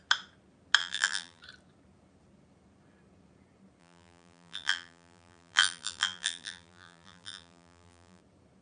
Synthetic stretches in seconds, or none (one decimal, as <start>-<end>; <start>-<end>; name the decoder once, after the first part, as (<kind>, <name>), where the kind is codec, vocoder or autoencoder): 0.8-1.4 (vocoder, BigVGAN v2); 3.8-8.2